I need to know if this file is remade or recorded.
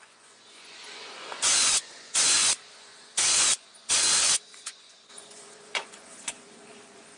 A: remade